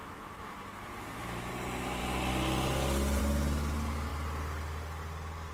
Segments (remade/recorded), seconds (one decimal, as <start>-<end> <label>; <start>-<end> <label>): 0.0-1.5 remade; 1.5-5.5 recorded